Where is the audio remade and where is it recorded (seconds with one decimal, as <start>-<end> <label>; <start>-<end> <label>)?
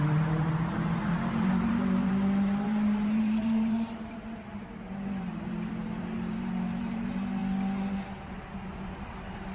0.0-7.4 remade; 7.4-8.5 recorded; 8.5-9.5 remade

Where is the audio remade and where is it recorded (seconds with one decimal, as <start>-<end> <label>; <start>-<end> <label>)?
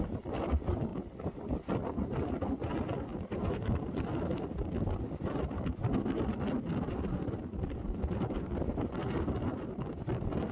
0.0-0.9 remade; 0.9-1.4 recorded; 1.4-3.1 remade; 3.1-3.7 recorded; 3.7-9.0 remade; 9.0-9.7 recorded; 9.7-10.5 remade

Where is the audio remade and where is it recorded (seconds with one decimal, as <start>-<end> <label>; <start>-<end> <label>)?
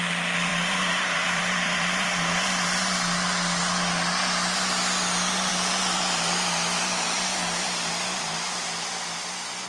0.0-0.5 recorded; 0.5-2.6 remade; 2.6-5.5 recorded; 5.5-9.7 remade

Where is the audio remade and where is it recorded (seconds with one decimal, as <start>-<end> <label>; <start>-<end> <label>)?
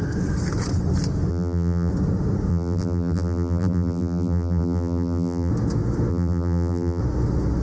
0.0-1.3 recorded; 1.3-1.9 remade; 1.9-2.5 recorded; 2.5-5.5 remade; 5.5-6.1 recorded; 6.1-7.0 remade; 7.0-7.6 recorded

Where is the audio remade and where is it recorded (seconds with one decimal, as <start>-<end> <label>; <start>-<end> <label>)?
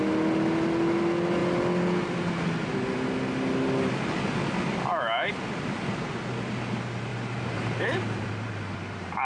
0.0-7.1 recorded; 7.1-9.2 remade